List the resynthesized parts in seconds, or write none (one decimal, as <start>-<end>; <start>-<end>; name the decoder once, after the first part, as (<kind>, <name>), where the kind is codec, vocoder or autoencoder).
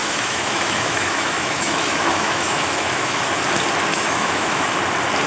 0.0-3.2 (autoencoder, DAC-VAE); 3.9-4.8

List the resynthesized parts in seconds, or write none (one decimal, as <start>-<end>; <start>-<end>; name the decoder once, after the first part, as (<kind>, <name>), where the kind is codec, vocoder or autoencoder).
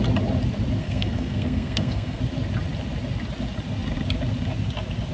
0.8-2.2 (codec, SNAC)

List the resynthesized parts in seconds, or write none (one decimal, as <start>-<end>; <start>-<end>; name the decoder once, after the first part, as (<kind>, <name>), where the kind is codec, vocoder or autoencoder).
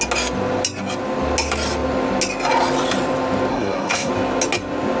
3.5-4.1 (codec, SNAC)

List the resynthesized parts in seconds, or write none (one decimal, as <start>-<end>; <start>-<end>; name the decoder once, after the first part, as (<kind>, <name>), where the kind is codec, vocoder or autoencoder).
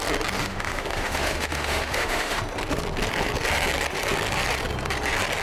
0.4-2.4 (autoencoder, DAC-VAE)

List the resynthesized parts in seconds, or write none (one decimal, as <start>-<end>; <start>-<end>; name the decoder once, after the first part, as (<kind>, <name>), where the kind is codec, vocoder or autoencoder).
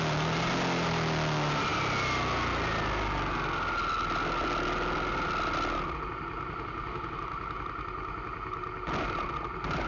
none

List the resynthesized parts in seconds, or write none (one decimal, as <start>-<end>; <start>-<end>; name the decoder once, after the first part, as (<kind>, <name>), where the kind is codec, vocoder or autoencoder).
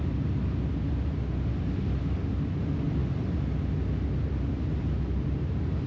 none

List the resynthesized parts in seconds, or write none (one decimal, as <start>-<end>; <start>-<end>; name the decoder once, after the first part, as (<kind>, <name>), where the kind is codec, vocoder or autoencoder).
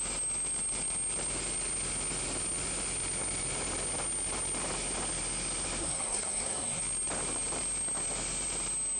5.8-6.8 (codec, SNAC)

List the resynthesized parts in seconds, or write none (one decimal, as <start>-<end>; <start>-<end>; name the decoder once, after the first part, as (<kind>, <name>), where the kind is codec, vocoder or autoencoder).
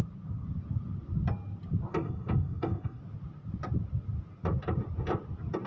1.9-3.0 (codec, SNAC)